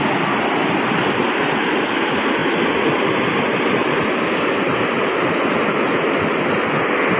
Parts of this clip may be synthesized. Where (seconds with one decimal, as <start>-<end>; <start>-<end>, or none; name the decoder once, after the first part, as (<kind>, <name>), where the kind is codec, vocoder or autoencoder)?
none